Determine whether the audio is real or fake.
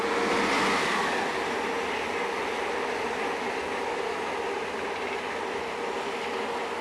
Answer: real